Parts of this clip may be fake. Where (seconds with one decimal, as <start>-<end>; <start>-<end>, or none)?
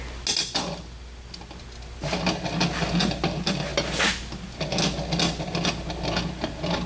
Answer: none